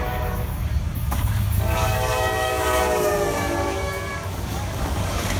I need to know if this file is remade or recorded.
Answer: remade